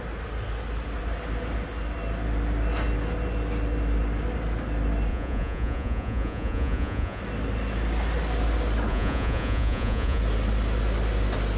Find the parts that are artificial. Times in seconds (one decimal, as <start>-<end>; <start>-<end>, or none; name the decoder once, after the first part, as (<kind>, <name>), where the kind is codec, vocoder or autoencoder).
5.1-7.2 (vocoder, Vocos); 8.9-10.2